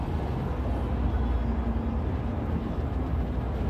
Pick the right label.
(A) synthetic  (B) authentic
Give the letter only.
B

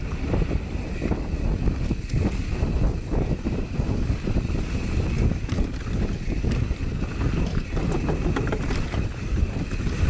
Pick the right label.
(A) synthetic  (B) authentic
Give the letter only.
B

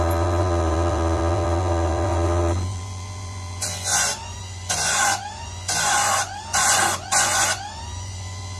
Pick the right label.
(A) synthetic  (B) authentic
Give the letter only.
A